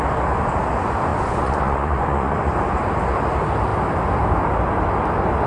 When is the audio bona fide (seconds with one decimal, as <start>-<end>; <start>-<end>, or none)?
0.0-1.1; 2.5-5.5